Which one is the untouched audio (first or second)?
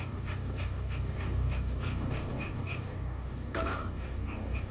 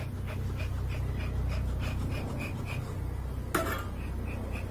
second